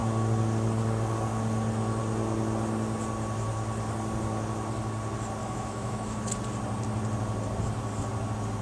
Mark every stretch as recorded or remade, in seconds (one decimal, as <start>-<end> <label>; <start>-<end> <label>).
0.0-5.4 recorded; 5.4-6.3 remade; 6.3-8.6 recorded